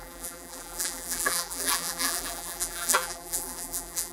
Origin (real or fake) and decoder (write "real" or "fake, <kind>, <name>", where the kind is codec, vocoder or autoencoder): fake, vocoder, BigVGAN v2